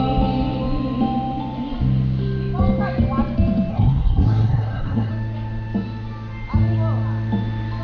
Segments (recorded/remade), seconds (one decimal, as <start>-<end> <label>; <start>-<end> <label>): 0.0-3.7 recorded; 3.7-5.1 remade; 5.1-7.8 recorded